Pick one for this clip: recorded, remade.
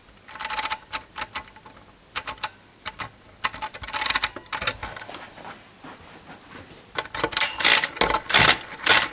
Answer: recorded